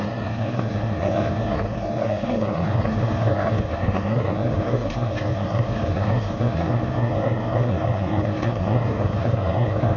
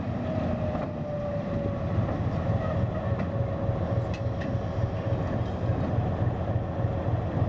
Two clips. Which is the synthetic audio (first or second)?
first